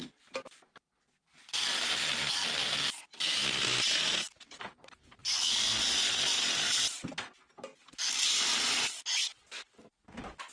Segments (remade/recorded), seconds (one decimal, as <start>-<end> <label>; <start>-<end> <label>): 0.0-10.5 recorded